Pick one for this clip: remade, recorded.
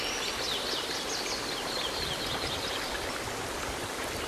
recorded